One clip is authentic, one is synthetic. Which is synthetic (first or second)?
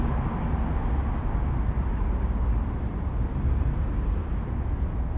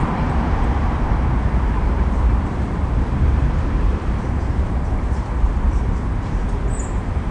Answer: second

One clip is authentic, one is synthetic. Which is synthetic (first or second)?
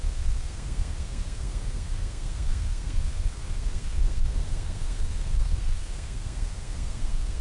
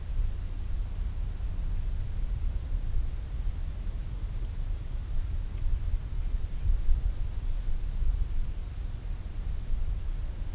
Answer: first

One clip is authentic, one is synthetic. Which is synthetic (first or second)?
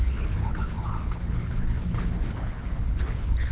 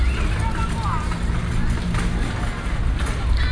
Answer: first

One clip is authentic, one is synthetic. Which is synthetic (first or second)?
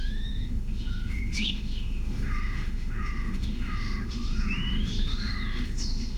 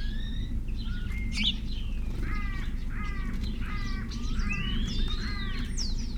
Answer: first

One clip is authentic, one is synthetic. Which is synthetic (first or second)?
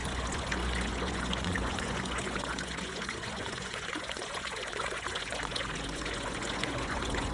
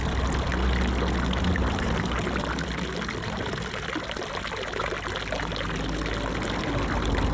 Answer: first